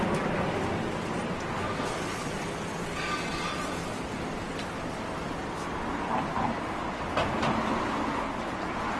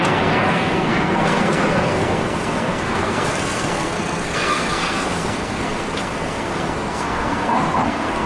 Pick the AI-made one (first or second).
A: second